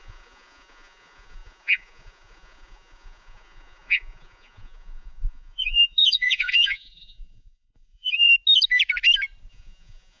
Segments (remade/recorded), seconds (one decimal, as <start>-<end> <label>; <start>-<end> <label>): 0.0-8.3 remade; 8.3-9.5 recorded; 9.5-10.2 remade